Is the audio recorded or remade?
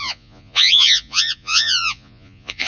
remade